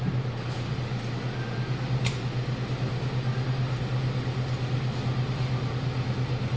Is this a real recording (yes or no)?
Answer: yes